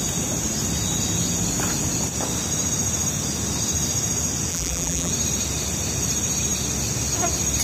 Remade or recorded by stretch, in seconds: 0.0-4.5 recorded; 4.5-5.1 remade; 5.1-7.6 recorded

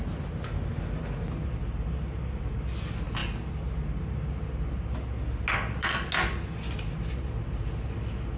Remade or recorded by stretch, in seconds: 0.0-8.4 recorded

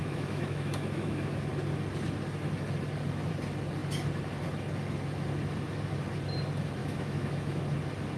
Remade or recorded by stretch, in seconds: 0.0-1.5 remade; 1.5-6.8 recorded; 6.8-7.6 remade; 7.6-8.2 recorded

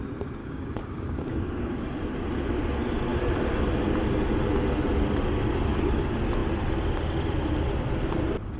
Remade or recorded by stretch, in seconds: 0.0-0.4 recorded; 0.4-1.8 remade; 1.8-8.6 recorded

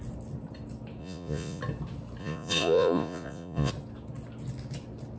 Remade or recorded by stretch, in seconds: 0.0-1.0 recorded; 1.0-1.6 remade; 1.6-2.2 recorded; 2.2-3.7 remade; 3.7-5.2 recorded

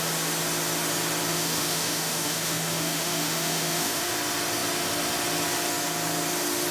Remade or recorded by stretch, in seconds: 0.0-1.3 recorded; 1.3-4.1 remade; 4.1-6.7 recorded